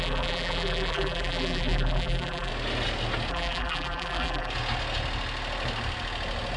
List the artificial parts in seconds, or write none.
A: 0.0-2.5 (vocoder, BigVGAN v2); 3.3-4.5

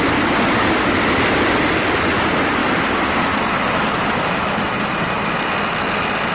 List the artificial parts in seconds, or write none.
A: 2.6-4.5 (vocoder, BigVGAN v2)

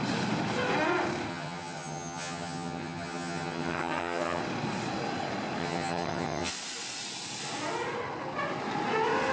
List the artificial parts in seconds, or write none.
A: 1.3-4.4 (vocoder, HiFi-GAN); 5.6-6.5

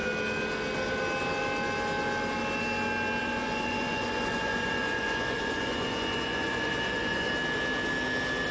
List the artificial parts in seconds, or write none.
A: 3.2-7.3 (vocoder, Vocos)

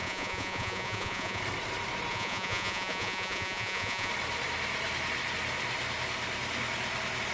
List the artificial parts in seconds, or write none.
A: 0.0-1.4 (vocoder, Vocos); 2.1-4.1

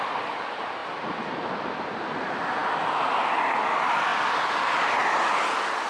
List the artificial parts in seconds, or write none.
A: none